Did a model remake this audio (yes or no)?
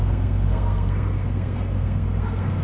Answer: yes